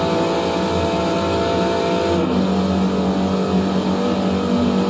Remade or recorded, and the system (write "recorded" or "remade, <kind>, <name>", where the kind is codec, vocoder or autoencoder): recorded